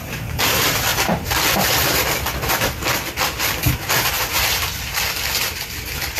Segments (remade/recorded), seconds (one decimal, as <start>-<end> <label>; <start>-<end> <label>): 0.0-6.2 remade

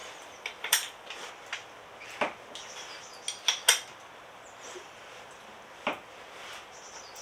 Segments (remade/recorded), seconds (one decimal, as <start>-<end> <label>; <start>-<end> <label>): 0.0-1.3 remade; 1.3-7.2 recorded

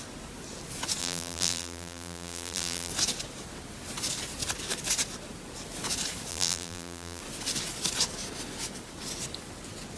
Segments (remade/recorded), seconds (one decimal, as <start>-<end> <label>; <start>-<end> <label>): 0.0-1.0 recorded; 1.0-2.9 remade; 2.9-6.3 recorded; 6.3-7.2 remade; 7.2-10.0 recorded

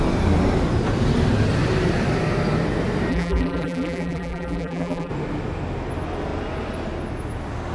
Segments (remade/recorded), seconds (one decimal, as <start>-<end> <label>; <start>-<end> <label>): 0.0-3.1 recorded; 3.1-5.1 remade; 5.1-7.7 recorded

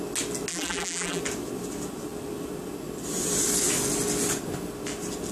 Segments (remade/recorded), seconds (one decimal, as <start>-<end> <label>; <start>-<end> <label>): 0.0-0.5 recorded; 0.5-1.2 remade; 1.2-5.3 recorded

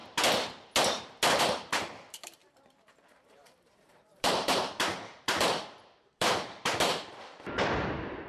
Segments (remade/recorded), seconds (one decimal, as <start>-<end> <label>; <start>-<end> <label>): 0.0-1.4 recorded; 1.4-7.1 remade; 7.1-8.3 recorded

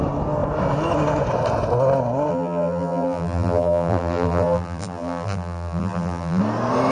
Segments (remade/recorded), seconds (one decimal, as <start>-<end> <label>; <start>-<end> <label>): 0.0-2.3 recorded; 2.3-6.4 remade; 6.4-6.9 recorded